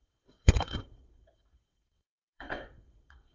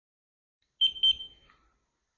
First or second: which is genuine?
second